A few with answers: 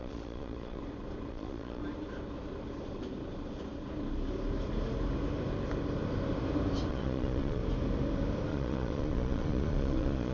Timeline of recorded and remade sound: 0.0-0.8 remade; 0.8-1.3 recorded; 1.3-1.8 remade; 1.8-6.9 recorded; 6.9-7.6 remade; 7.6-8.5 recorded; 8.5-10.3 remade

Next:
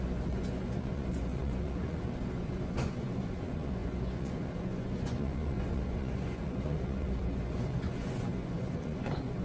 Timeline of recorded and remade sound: 0.0-9.4 remade

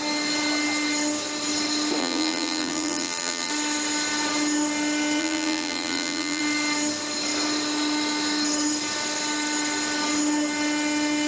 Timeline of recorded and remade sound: 0.0-2.0 recorded; 2.0-3.5 remade; 3.5-5.2 recorded; 5.2-6.4 remade; 6.4-11.3 recorded

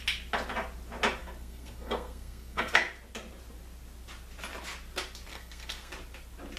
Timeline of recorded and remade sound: 0.0-1.2 recorded; 1.2-2.7 remade; 2.7-5.3 recorded; 5.3-5.9 remade; 5.9-6.6 recorded

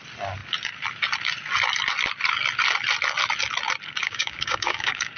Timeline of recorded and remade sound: 0.0-4.0 recorded; 4.0-5.2 remade